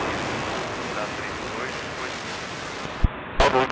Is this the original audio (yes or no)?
yes